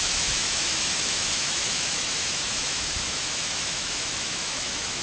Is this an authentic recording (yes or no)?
no